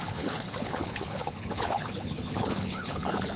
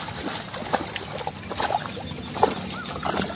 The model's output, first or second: first